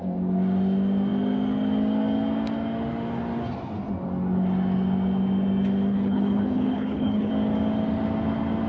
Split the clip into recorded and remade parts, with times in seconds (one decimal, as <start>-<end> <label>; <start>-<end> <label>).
0.0-5.9 recorded; 5.9-7.3 remade; 7.3-8.7 recorded

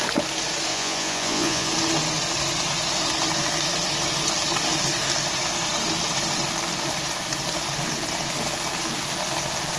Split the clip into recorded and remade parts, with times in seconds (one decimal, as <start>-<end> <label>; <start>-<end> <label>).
0.0-0.7 recorded; 0.7-1.7 remade; 1.7-9.8 recorded